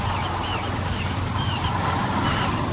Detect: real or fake real